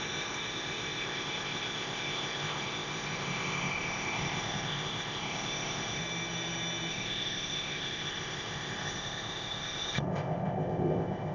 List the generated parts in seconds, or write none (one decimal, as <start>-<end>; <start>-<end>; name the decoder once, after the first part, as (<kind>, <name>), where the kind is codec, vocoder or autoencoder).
0.0-6.0 (codec, ZipCodec); 6.9-11.3